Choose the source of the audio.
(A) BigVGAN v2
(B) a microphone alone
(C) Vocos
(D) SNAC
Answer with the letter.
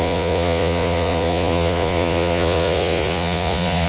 C